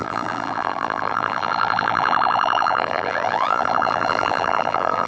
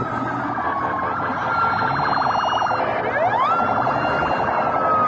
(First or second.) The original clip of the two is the second